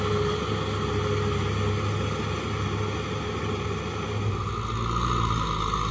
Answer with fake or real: real